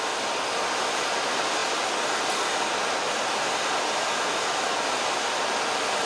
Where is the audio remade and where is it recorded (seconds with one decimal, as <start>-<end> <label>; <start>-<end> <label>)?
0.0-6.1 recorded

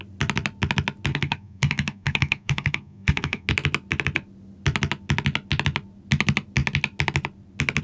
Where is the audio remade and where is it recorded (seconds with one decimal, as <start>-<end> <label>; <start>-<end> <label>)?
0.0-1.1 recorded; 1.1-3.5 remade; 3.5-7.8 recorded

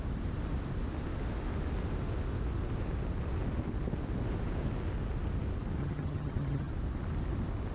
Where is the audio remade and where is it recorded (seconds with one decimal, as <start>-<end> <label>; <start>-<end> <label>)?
0.0-5.8 recorded; 5.8-6.7 remade; 6.7-7.7 recorded